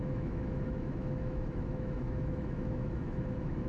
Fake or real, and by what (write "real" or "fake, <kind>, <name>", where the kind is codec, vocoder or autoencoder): fake, autoencoder, DAC-VAE